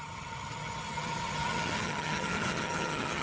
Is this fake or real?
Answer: fake